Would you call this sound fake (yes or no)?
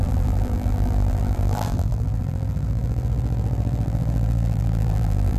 yes